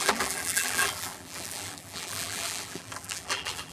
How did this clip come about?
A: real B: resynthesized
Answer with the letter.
B